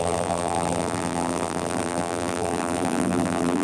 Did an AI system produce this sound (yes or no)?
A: yes